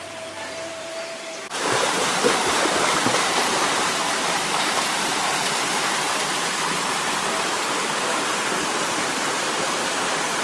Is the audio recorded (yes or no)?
no